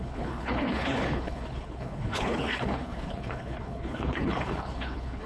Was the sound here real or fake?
fake